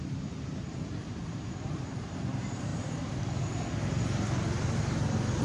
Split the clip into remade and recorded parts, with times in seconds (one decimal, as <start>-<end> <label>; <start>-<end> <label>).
0.0-1.0 recorded; 1.0-1.8 remade; 1.8-2.7 recorded; 2.7-3.2 remade; 3.2-5.4 recorded